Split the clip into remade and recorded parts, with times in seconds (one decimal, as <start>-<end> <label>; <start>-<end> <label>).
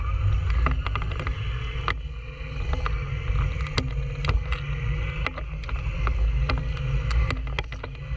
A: 0.0-8.2 recorded